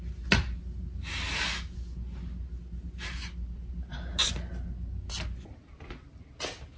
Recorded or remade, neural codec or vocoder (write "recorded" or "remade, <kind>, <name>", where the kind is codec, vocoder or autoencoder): recorded